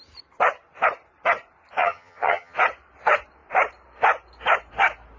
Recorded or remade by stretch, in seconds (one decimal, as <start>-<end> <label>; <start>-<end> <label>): 0.0-1.8 recorded; 1.8-2.6 remade; 2.6-5.2 recorded